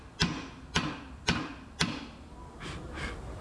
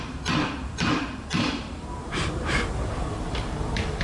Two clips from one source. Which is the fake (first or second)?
second